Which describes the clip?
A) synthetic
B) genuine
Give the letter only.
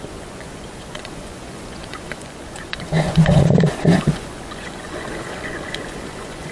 A